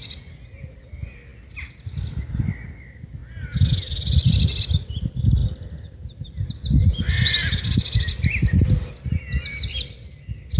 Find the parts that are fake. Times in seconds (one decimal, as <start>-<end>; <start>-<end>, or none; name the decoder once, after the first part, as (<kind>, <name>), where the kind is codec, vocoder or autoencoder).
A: none